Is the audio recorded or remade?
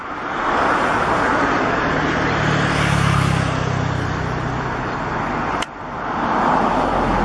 recorded